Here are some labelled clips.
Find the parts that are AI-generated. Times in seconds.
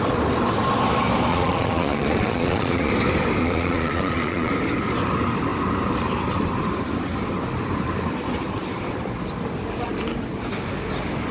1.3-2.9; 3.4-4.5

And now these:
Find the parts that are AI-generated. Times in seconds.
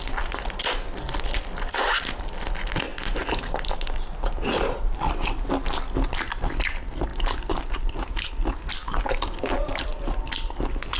none